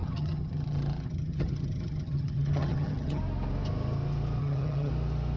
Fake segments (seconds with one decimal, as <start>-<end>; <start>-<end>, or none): 0.0-3.2; 4.4-4.9